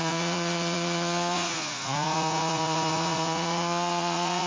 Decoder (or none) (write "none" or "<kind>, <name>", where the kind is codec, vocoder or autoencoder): vocoder, Vocos